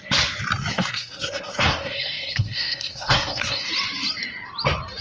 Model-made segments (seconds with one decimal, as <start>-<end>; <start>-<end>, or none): 0.7-3.7